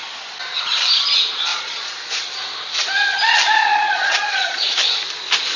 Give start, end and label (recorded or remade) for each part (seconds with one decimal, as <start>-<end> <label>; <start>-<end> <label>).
0.0-1.5 recorded; 1.5-2.1 remade; 2.1-3.7 recorded; 3.7-4.7 remade; 4.7-5.6 recorded